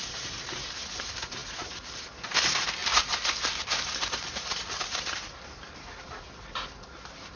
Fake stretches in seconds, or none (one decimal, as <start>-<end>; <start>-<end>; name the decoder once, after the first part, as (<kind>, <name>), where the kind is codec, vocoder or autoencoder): none